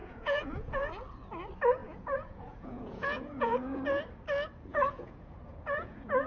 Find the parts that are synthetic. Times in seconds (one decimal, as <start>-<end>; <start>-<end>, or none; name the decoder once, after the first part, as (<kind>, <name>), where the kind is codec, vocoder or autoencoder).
0.0-0.9 (vocoder, Vocos); 1.8-4.0; 4.7-6.3